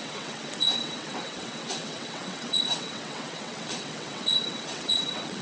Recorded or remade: remade